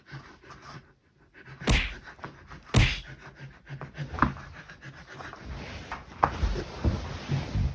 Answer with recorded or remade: recorded